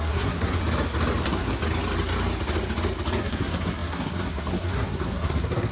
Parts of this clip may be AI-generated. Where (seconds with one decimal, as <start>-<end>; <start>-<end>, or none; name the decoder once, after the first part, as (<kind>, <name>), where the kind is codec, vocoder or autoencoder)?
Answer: 0.0-0.6 (codec, SNAC); 1.2-1.6; 3.2-5.7